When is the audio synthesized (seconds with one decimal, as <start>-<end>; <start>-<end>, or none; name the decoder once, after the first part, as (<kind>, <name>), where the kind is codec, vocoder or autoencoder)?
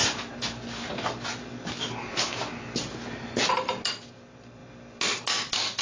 none